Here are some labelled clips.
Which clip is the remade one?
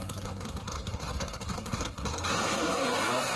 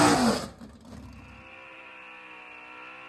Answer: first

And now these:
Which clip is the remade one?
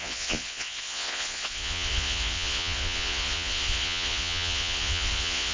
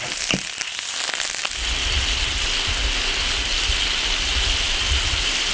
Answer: first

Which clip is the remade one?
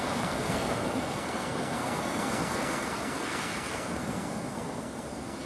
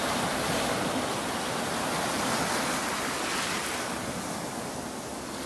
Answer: first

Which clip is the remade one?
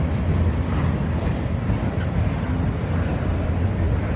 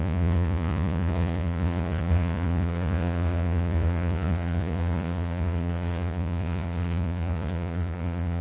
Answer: second